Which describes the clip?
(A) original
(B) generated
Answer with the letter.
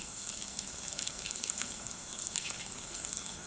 B